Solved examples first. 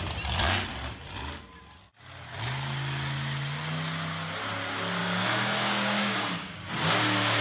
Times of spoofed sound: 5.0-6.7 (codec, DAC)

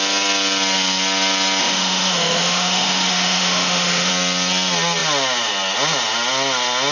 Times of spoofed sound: 1.6-4.1 (autoencoder, DAC-VAE)

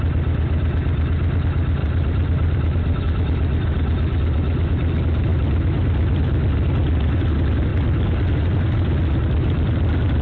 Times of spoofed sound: 1.8-3.0 (vocoder, BigVGAN v2); 5.3-6.2

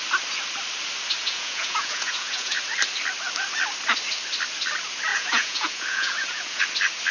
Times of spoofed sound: 1.2-2.6 (vocoder, Vocos); 5.1-6.6

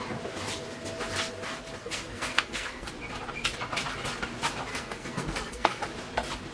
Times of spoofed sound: 1.8-2.9 (codec, SNAC); 4.7-5.8

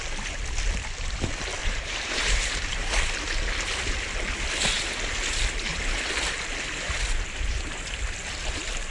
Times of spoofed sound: 1.6-2.9 (vocoder, BigVGAN v2); 5.7-6.3

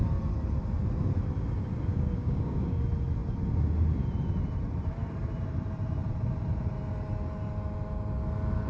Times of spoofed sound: 1.9-2.8 (codec, DAC)